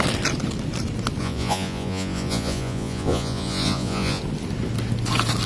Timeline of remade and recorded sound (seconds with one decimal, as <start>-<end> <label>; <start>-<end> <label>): 0.0-1.2 recorded; 1.2-4.2 remade; 4.2-5.5 recorded